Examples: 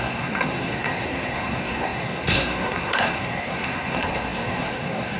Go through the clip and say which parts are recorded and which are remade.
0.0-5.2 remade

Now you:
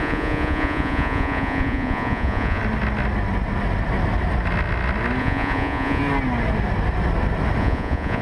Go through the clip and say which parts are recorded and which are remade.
0.0-2.6 remade; 2.6-5.2 recorded; 5.2-6.0 remade; 6.0-7.6 recorded; 7.6-8.2 remade

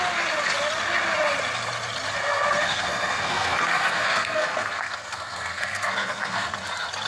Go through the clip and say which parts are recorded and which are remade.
0.0-2.2 recorded; 2.2-6.5 remade; 6.5-7.1 recorded

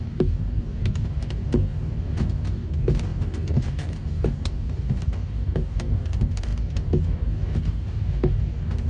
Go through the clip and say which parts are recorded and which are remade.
0.0-8.9 remade

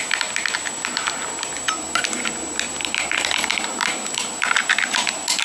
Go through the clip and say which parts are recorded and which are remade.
0.0-5.4 recorded

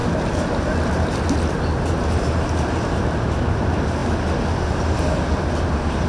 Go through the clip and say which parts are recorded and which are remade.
0.0-6.1 recorded